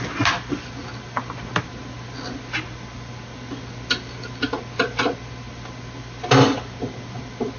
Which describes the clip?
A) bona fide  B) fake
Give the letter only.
A